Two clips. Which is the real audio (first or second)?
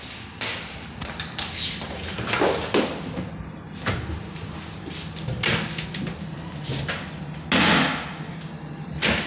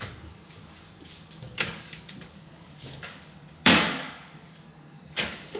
first